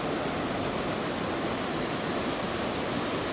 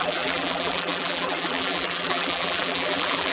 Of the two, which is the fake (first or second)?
second